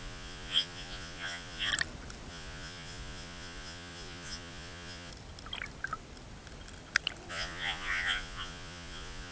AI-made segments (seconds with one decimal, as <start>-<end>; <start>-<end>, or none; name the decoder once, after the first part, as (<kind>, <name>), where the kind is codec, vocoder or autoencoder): 0.0-1.7 (vocoder, Vocos); 2.3-5.1; 7.3-9.3